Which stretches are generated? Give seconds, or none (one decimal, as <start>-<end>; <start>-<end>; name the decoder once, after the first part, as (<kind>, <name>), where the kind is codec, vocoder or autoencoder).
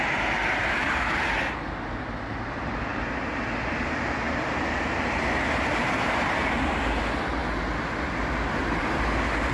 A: none